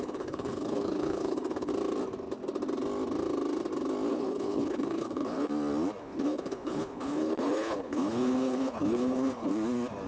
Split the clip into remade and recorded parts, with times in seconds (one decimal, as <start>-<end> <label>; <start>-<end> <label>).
0.0-1.7 remade; 1.7-4.1 recorded; 4.1-5.5 remade; 5.5-6.0 recorded; 6.0-9.5 remade; 9.5-10.1 recorded